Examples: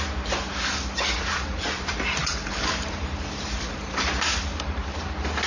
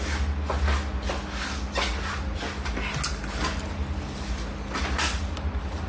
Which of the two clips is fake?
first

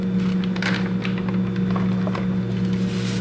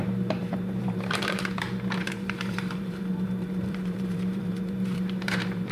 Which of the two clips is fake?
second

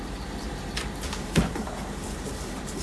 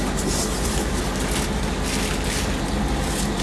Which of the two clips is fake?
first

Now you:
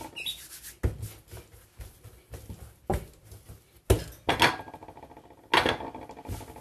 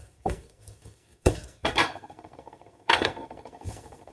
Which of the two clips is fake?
second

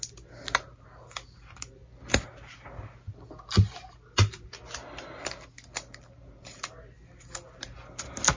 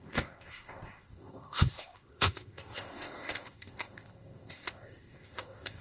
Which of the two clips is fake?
second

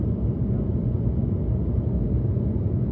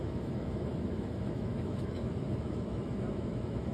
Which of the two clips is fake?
second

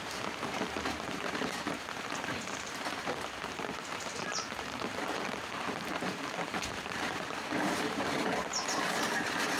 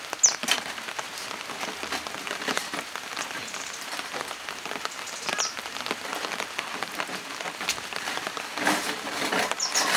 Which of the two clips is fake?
first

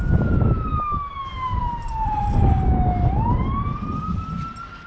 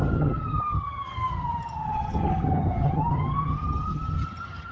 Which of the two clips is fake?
second